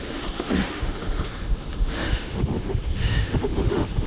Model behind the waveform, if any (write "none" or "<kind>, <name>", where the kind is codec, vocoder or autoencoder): autoencoder, DAC-VAE